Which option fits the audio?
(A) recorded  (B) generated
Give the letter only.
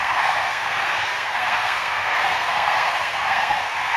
B